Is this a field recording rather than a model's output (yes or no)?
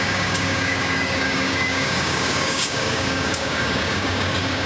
no